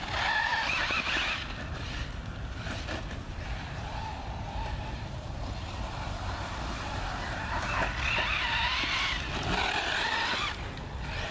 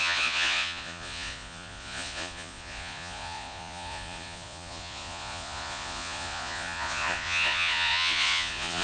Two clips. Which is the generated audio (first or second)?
second